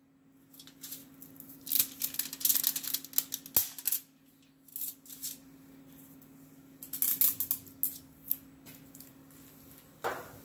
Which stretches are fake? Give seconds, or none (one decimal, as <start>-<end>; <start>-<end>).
none